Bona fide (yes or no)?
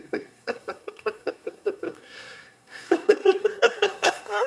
no